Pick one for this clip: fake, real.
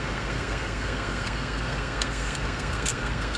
fake